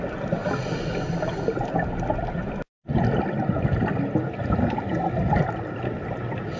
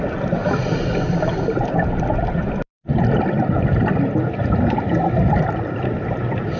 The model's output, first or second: second